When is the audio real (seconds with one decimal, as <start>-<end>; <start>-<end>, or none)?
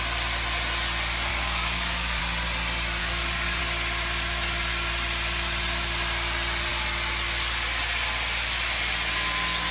0.0-1.3; 2.2-3.0; 3.6-9.7